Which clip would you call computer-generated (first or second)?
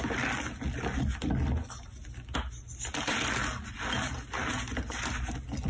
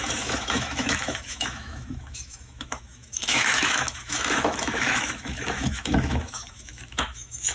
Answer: second